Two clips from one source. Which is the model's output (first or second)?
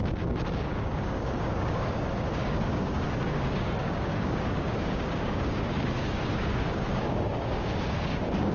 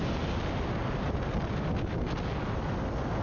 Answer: first